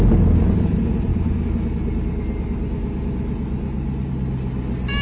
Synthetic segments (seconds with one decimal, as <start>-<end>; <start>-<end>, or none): none